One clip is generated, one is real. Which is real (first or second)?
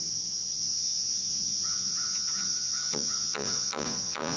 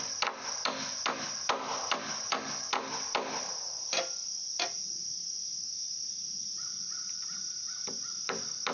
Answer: second